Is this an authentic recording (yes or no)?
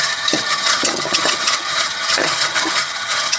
no